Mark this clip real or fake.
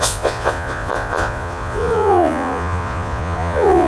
fake